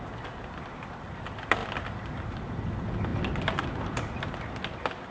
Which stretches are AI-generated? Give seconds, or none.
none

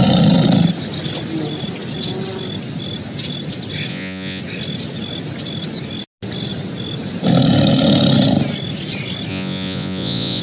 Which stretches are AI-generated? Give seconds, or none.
3.9-4.4; 9.3-10.4

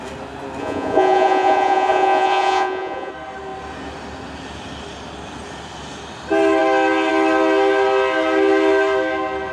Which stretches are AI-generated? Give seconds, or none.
0.6-3.1

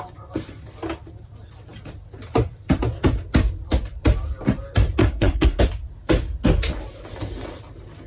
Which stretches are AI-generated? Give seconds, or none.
5.0-5.6